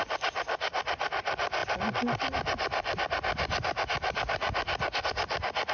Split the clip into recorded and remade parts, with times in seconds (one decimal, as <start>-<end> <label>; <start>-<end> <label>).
0.0-5.7 recorded